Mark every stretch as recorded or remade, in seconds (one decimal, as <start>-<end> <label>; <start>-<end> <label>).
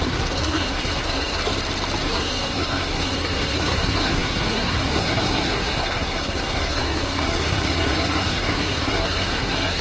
0.0-1.4 remade; 1.4-2.0 recorded; 2.0-9.8 remade